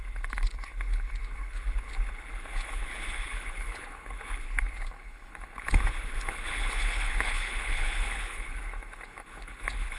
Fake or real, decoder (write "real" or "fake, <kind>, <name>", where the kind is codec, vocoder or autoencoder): fake, codec, HILCodec